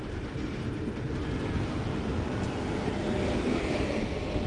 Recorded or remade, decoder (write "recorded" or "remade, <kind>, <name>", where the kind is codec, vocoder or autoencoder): recorded